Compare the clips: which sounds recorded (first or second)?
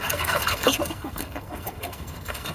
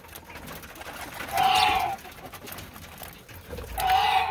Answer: second